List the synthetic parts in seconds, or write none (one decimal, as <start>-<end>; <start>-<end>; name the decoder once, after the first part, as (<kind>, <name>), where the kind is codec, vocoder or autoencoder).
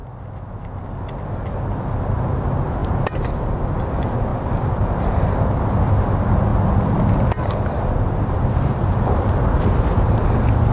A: 4.3-5.1 (vocoder, BigVGAN v2); 6.5-9.6